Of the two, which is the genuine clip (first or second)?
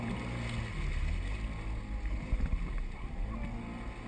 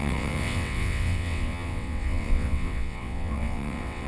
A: first